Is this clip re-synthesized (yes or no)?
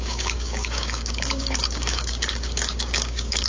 yes